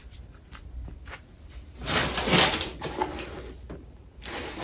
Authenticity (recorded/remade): recorded